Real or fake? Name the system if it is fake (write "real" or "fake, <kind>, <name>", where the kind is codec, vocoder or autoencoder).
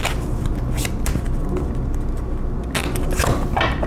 real